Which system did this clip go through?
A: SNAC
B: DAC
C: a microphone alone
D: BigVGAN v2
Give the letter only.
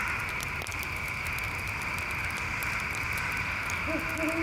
C